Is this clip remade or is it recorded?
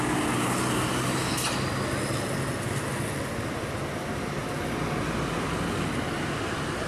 recorded